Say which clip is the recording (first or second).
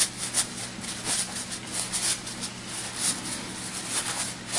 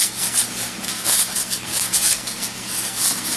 first